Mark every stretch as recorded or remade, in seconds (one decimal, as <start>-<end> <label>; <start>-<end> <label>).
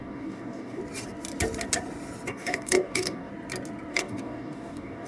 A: 0.0-0.8 remade; 0.8-2.3 recorded; 2.3-3.3 remade; 3.3-3.9 recorded; 3.9-5.1 remade